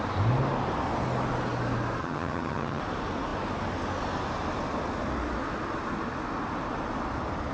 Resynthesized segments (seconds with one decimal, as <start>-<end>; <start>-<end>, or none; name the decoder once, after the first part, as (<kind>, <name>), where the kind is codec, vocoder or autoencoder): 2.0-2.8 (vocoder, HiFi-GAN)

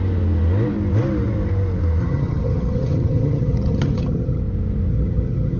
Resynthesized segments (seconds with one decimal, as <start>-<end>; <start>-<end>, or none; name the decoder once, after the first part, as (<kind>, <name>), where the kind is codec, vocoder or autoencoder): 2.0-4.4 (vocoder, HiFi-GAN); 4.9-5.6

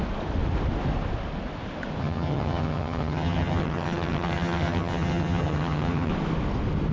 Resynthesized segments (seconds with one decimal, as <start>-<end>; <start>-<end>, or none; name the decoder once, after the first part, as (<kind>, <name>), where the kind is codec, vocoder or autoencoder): 2.0-6.1 (vocoder, HiFi-GAN)